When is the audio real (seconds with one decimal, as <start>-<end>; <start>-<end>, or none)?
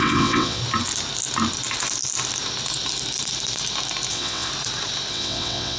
0.6-4.1; 4.5-5.1